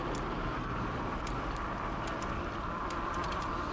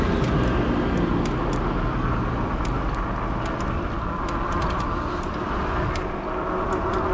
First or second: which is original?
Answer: second